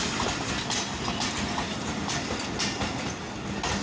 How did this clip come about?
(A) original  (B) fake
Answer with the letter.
A